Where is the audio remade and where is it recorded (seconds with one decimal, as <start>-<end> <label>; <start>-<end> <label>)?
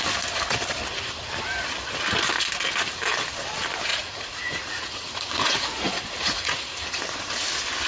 0.0-3.9 recorded; 3.9-7.0 remade; 7.0-7.9 recorded